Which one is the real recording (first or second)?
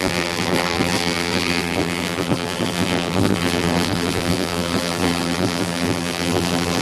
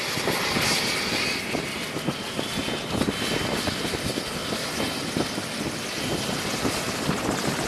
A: second